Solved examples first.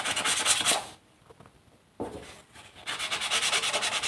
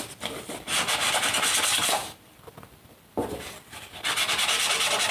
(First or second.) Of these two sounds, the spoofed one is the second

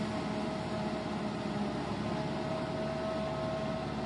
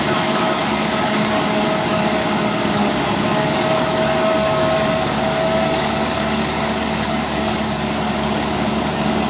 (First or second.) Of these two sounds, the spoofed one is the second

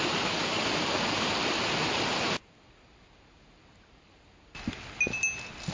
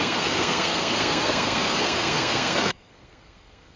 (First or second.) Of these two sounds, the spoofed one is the second